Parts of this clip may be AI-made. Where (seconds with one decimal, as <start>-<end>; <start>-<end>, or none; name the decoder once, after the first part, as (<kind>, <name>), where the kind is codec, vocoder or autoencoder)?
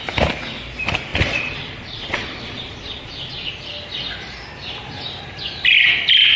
1.1-3.5 (vocoder, Vocos)